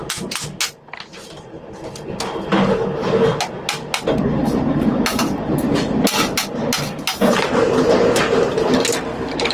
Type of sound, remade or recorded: recorded